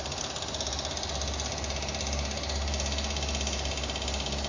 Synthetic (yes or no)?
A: no